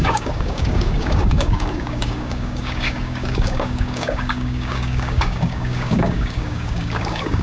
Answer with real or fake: fake